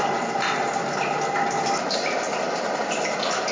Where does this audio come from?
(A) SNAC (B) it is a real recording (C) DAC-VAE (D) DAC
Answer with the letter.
B